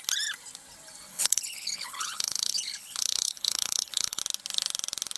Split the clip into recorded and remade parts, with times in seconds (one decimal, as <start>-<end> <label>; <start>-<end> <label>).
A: 0.0-1.1 recorded; 1.1-4.2 remade; 4.2-5.2 recorded